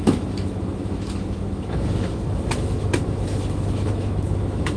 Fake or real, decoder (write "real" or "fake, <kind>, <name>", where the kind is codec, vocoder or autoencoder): fake, autoencoder, DAC-VAE